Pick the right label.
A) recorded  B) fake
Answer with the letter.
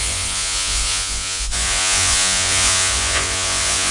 B